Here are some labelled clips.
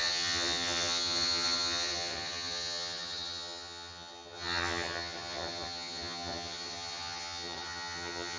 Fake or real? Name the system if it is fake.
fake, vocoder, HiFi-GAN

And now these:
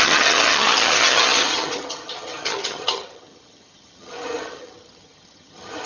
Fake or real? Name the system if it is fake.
fake, vocoder, HiFi-GAN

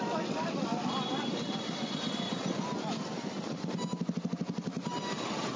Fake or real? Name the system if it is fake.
real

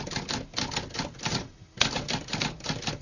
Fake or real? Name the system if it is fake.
real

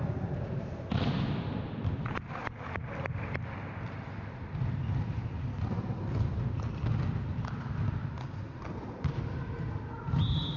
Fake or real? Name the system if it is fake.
real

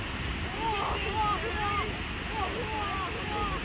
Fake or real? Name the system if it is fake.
real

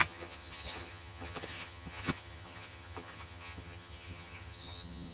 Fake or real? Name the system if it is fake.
fake, vocoder, HiFi-GAN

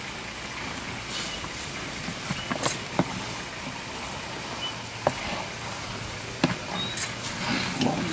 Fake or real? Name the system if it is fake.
real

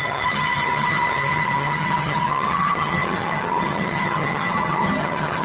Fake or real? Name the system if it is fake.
fake, vocoder, HiFi-GAN